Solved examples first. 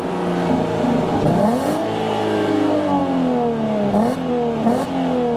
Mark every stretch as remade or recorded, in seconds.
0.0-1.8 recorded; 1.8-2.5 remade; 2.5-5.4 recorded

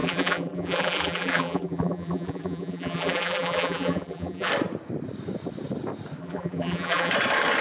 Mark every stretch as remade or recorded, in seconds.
0.0-4.5 remade; 4.5-6.2 recorded; 6.2-7.1 remade; 7.1-7.6 recorded

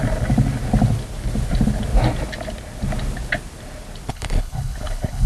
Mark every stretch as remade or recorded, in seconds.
0.0-4.1 recorded; 4.1-5.3 remade